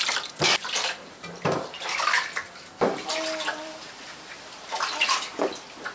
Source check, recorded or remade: recorded